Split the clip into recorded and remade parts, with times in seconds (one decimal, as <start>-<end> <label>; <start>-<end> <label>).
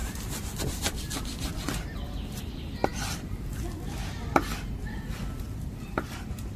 0.0-6.6 recorded